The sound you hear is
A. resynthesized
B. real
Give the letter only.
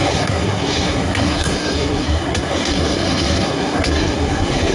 A